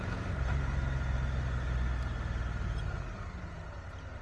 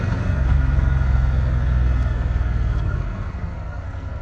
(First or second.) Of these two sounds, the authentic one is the first